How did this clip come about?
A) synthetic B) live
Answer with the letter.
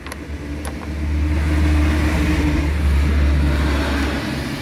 B